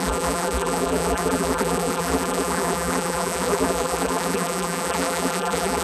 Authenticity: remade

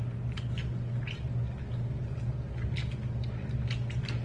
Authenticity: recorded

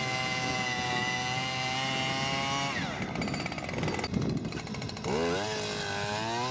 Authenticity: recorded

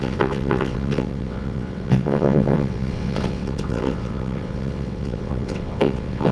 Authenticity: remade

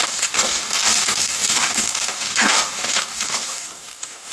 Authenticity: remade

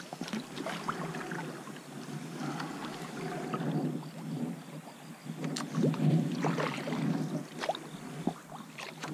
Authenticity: recorded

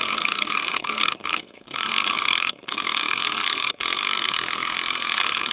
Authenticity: remade